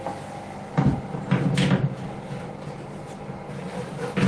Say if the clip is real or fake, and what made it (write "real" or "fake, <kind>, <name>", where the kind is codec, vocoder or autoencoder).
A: real